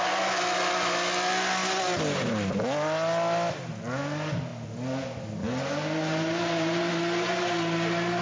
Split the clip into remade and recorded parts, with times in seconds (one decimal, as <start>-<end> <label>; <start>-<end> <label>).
0.0-8.2 recorded